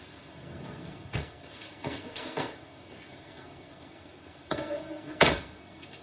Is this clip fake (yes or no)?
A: yes